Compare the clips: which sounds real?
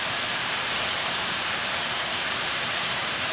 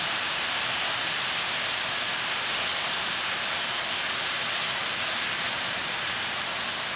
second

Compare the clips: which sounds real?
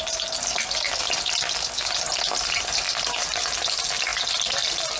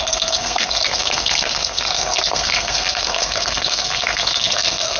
first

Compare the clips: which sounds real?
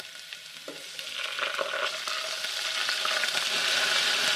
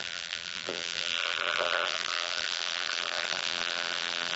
first